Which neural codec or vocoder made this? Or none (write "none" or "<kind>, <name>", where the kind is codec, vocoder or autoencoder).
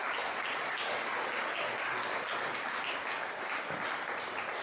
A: none